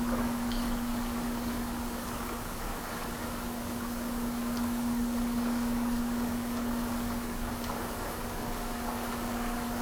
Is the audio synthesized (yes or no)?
yes